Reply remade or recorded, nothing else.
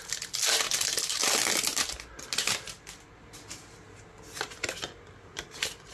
recorded